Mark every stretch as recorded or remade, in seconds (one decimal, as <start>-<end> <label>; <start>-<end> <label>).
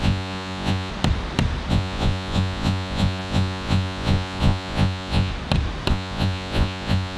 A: 0.0-0.9 remade; 0.9-1.7 recorded; 1.7-5.3 remade; 5.3-5.9 recorded; 5.9-7.2 remade